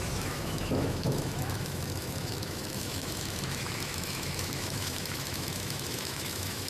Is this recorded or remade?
remade